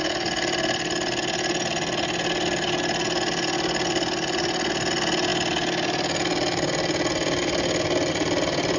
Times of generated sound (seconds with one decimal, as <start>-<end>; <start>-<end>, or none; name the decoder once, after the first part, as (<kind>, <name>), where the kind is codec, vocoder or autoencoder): none